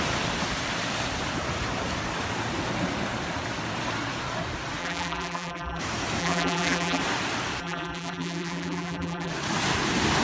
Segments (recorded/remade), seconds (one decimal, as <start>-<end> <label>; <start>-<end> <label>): 0.0-4.8 recorded; 4.8-5.8 remade; 5.8-6.2 recorded; 6.2-7.0 remade; 7.0-7.6 recorded; 7.6-9.3 remade; 9.3-10.2 recorded